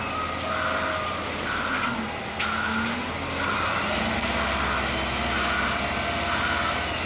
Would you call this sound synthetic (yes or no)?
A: no